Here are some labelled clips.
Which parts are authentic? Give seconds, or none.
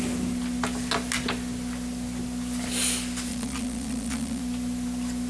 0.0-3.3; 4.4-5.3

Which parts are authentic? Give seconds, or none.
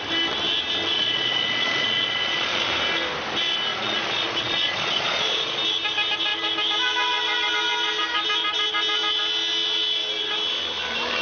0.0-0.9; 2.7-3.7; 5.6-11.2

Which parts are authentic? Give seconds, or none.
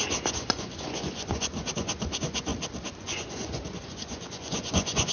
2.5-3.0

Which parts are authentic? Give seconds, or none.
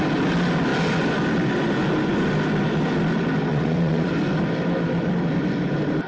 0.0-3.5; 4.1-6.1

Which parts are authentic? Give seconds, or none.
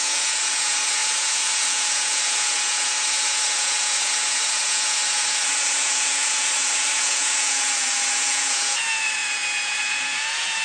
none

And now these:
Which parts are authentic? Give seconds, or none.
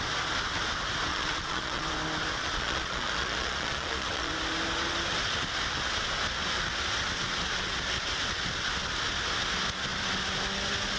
0.0-1.1; 1.9-2.4; 4.3-11.0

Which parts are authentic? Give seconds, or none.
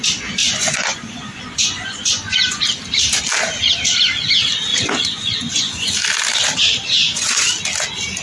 0.0-0.4; 2.6-4.7; 5.9-7.0; 7.5-8.2